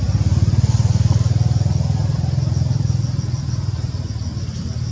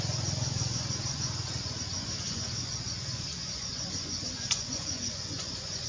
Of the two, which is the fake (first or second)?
second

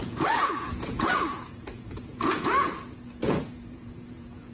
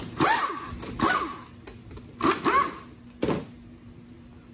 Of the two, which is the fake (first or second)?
first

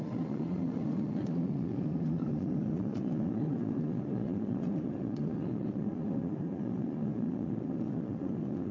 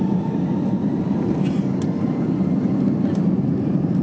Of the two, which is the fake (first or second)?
first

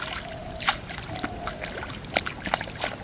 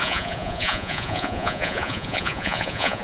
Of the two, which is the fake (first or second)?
second